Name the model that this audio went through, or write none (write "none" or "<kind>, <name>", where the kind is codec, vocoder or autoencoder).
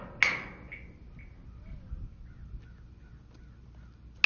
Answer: none